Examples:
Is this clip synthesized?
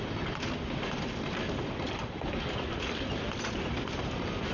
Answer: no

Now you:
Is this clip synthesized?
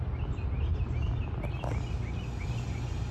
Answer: no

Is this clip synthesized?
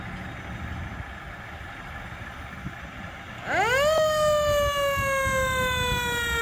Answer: no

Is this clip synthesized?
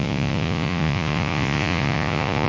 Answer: yes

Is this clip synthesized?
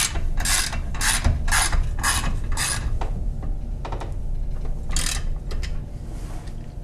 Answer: no